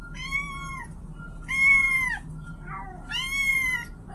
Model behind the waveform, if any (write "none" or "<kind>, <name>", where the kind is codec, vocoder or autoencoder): none